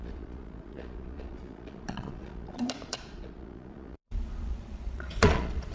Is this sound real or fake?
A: fake